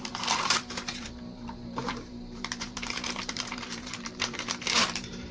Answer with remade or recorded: remade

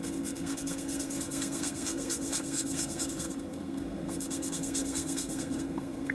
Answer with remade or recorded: remade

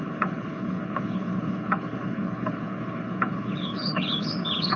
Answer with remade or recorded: remade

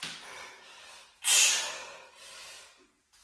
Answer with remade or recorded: recorded